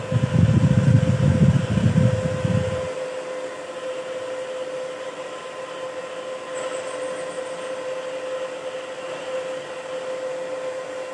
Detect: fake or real real